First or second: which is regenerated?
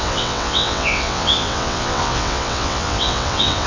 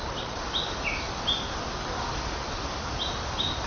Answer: first